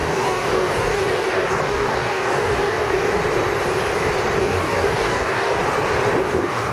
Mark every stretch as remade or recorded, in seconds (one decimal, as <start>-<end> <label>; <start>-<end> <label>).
0.0-3.2 remade; 3.2-4.4 recorded; 4.4-5.6 remade; 5.6-6.2 recorded; 6.2-6.7 remade